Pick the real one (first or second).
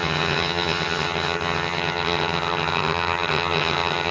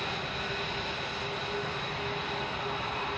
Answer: second